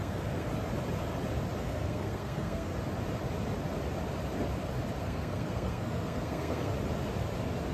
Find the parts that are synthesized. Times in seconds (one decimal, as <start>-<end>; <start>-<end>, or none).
0.0-0.5; 1.6-2.7; 5.0-6.7